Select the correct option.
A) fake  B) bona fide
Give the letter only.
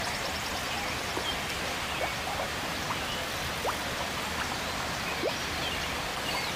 B